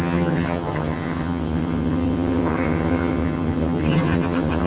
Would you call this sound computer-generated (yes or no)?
yes